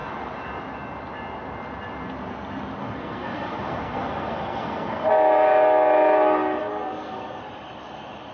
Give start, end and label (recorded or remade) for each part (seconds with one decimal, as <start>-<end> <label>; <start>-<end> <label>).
0.0-2.8 recorded; 2.8-5.1 remade; 5.1-6.7 recorded; 6.7-7.4 remade; 7.4-8.3 recorded